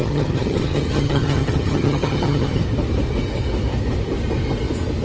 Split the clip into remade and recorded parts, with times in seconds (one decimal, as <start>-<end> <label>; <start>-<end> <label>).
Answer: 0.0-2.6 remade; 2.6-5.0 recorded

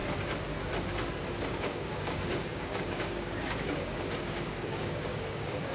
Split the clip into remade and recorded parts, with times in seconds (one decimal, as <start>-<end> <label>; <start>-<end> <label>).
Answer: 0.0-1.5 recorded; 1.5-5.7 remade